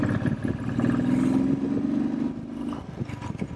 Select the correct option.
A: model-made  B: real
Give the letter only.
B